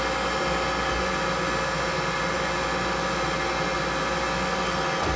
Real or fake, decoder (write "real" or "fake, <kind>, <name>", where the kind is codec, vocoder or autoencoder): real